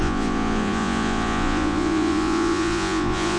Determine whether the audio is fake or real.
fake